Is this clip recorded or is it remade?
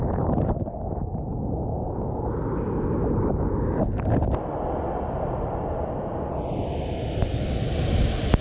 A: recorded